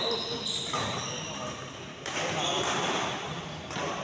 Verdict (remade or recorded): recorded